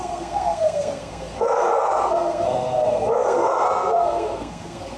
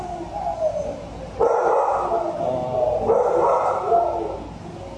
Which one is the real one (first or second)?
second